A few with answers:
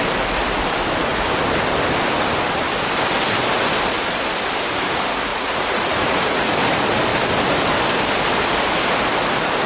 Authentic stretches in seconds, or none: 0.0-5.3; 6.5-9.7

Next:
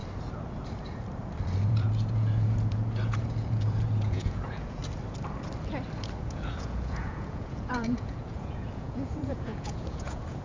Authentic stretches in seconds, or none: 0.0-1.6; 4.8-6.2

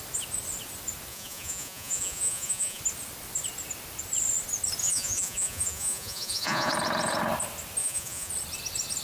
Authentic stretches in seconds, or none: 0.0-1.1; 2.8-4.8; 6.7-7.8; 8.3-9.0

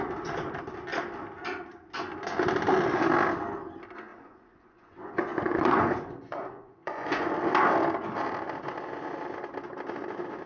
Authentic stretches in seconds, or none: 0.0-4.1; 7.3-10.5

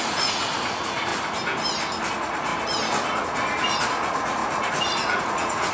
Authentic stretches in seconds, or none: 1.1-2.1; 2.5-3.2

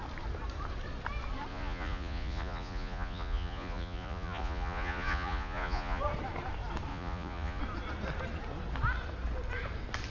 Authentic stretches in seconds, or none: 0.0-1.5; 6.0-6.9; 7.6-10.1

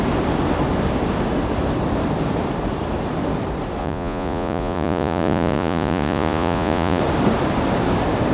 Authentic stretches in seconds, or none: 0.0-3.8; 7.0-8.3

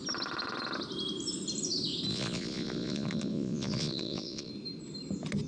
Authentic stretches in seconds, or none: 0.0-2.1; 4.5-5.5